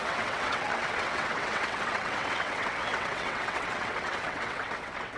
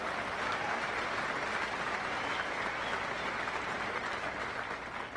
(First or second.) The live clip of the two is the second